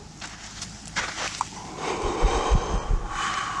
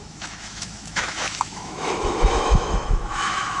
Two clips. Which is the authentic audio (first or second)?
first